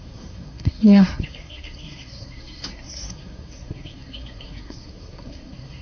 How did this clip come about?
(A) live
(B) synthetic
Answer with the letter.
B